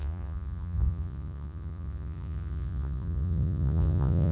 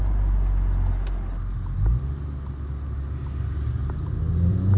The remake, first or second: first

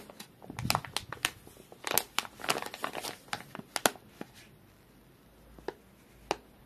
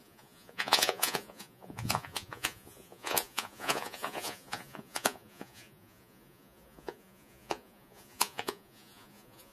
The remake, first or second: second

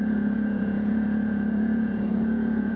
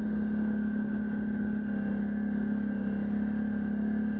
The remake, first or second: first